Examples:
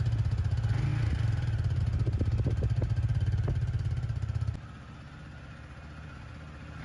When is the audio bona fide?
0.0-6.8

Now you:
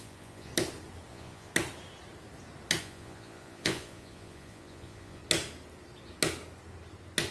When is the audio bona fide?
0.5-1.1; 1.5-2.8; 5.2-7.3